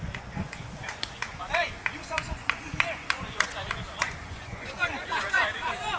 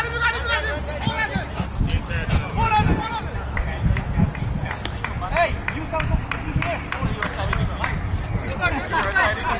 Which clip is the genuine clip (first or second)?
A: second